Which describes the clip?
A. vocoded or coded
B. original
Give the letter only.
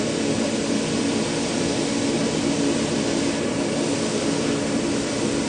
B